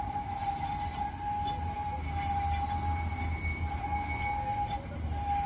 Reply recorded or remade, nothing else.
recorded